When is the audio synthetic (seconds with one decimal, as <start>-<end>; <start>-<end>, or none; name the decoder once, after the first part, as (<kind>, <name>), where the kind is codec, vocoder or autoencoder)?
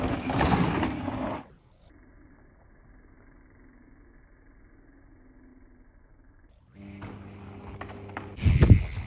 none